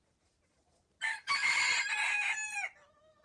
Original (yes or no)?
yes